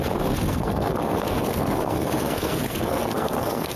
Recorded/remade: remade